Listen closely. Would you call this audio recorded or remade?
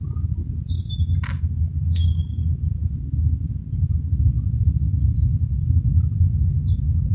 recorded